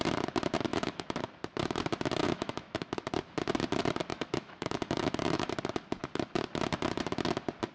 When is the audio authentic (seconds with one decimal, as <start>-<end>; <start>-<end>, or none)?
0.0-0.7; 1.2-2.2; 2.9-4.1; 5.5-7.7

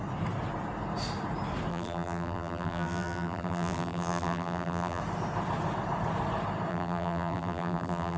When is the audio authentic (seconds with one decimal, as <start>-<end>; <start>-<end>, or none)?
0.0-1.7; 5.0-6.7

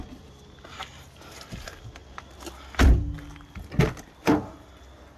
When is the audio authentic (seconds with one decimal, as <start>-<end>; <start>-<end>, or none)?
0.0-5.2

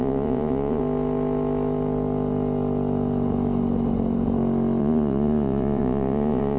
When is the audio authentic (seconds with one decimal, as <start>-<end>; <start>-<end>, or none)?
0.8-4.8

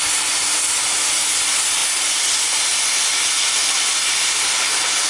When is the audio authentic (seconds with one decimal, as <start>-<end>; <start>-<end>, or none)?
0.0-5.1